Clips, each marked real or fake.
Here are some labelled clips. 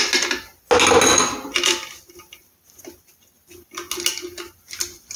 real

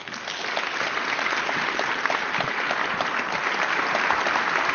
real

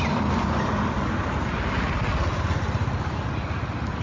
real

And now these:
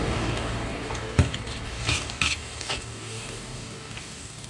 fake